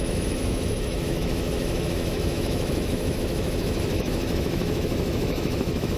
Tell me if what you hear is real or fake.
fake